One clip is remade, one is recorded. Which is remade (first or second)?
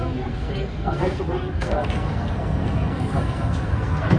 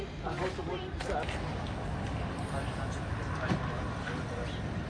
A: first